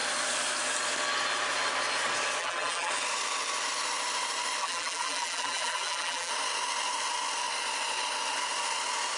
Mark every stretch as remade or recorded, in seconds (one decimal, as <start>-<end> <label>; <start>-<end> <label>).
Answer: 0.0-2.4 recorded; 2.4-2.9 remade; 2.9-4.6 recorded; 4.6-6.3 remade; 6.3-9.2 recorded